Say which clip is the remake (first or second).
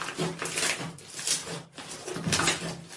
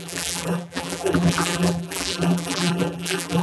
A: second